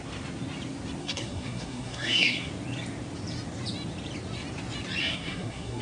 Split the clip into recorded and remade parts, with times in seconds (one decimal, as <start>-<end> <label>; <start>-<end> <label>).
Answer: 0.0-1.0 recorded; 1.0-2.5 remade; 2.5-5.0 recorded; 5.0-5.8 remade